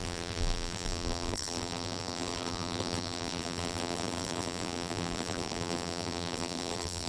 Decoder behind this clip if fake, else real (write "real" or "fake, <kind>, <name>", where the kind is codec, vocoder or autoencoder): fake, vocoder, BigVGAN v2